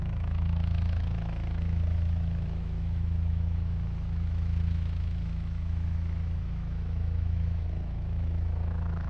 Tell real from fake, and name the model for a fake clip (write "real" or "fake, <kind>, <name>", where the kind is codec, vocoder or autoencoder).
fake, autoencoder, DAC-VAE